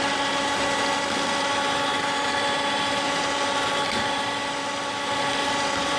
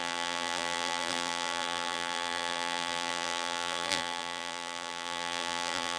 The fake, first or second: second